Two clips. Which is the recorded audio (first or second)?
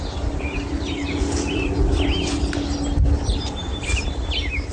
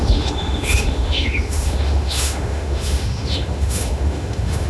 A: first